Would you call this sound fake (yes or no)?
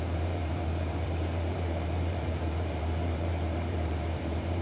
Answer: yes